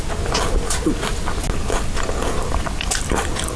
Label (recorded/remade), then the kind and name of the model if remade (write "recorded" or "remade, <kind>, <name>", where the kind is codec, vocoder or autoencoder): recorded